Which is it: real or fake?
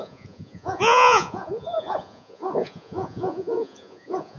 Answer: fake